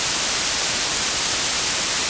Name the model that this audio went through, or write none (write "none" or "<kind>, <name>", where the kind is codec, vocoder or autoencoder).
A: none